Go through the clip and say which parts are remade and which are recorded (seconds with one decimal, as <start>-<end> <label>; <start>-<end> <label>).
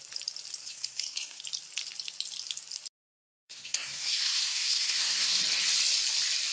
0.0-0.6 recorded; 0.6-1.4 remade; 1.4-3.2 recorded; 3.2-5.4 remade; 5.4-6.5 recorded